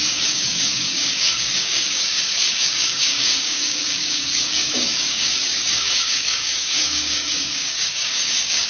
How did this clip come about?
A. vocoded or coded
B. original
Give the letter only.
A